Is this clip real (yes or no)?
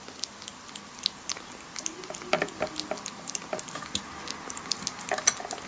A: yes